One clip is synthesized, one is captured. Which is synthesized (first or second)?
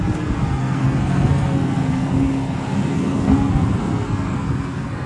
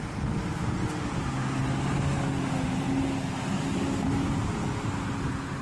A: first